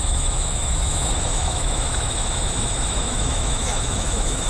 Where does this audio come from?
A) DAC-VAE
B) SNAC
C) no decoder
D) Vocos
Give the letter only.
A